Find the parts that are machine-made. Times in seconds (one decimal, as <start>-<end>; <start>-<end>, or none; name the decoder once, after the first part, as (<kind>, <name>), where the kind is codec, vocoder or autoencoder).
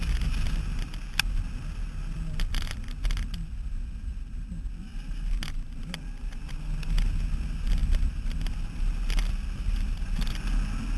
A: none